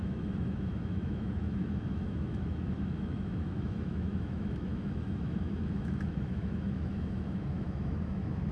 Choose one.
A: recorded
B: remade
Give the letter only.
B